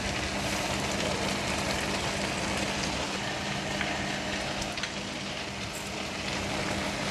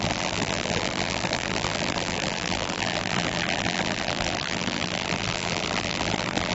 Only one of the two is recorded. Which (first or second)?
first